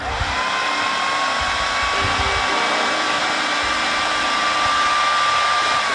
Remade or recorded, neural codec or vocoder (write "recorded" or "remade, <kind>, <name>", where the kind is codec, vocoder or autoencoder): recorded